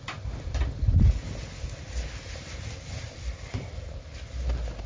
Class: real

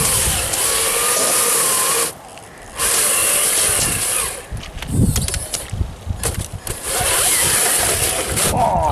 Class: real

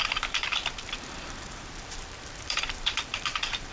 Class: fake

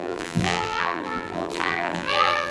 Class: fake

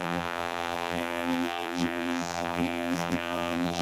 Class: fake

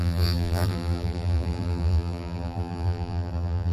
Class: fake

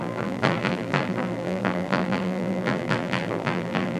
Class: fake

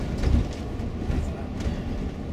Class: real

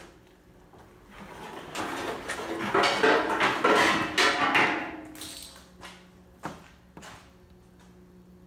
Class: real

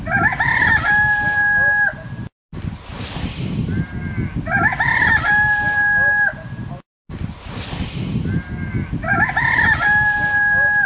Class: real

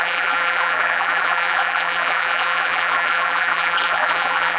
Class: fake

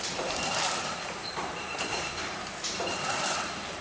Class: fake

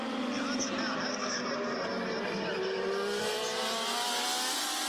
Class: real